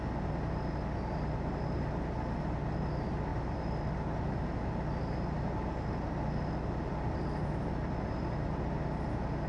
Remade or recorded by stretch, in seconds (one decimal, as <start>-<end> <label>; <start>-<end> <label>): 0.0-9.5 recorded